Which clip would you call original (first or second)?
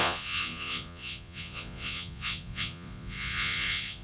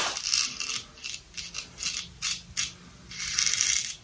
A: second